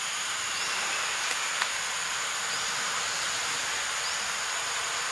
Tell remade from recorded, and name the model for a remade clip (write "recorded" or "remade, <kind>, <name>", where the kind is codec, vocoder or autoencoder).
recorded